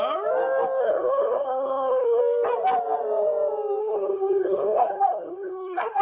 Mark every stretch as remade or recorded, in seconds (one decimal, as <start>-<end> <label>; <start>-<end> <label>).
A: 0.0-0.8 recorded; 0.8-2.2 remade; 2.2-3.8 recorded; 3.8-6.0 remade